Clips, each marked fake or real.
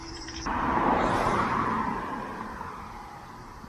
fake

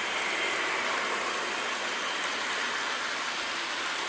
real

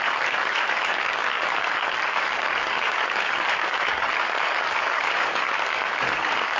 fake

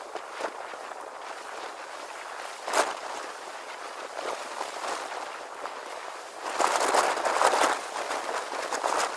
real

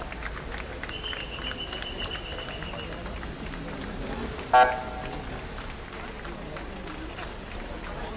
real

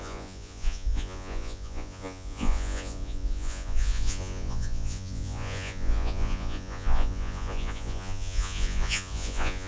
fake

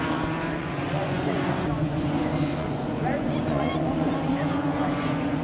fake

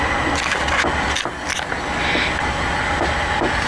real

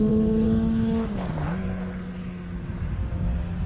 real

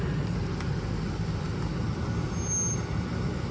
real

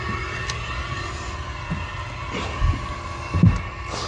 real